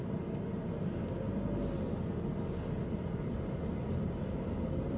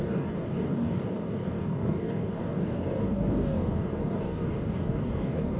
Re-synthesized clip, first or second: second